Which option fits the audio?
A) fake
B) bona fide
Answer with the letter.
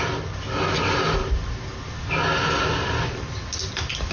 B